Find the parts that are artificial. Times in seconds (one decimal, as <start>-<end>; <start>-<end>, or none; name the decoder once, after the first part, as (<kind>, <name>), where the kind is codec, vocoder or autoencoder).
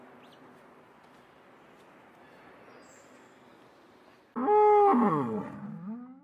none